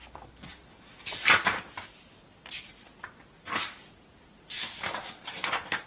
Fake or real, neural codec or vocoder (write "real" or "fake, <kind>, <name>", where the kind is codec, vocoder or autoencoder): real